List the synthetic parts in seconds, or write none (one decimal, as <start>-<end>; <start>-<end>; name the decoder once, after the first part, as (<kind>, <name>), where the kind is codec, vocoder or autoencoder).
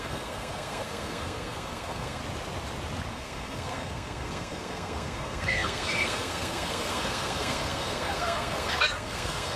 0.0-2.2 (codec, SNAC); 3.1-9.6